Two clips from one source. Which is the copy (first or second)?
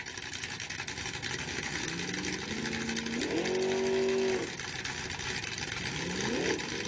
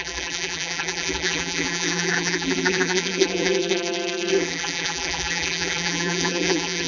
second